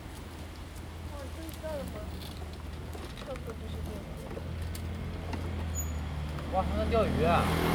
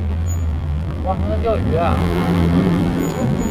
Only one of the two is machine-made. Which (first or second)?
second